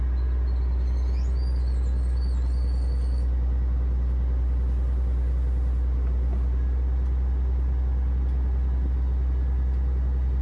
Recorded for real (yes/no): yes